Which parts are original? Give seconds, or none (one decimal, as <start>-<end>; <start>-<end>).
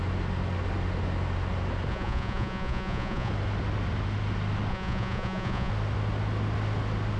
0.0-1.9; 3.3-4.7; 5.7-7.2